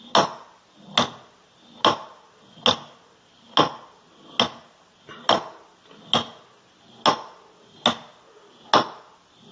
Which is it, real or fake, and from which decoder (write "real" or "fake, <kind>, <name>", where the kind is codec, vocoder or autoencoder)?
real